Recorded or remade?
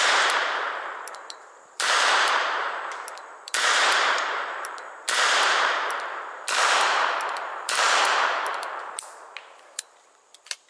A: remade